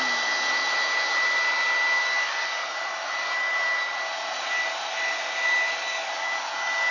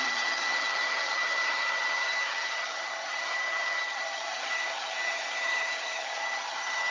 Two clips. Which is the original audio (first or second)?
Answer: first